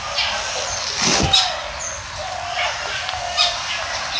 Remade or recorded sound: recorded